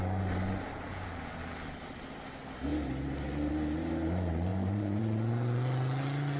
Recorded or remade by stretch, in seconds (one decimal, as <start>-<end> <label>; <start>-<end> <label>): 0.0-4.5 recorded; 4.5-5.0 remade; 5.0-6.4 recorded